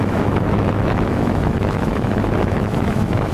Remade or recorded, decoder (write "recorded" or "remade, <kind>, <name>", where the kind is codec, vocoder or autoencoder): remade, autoencoder, DAC-VAE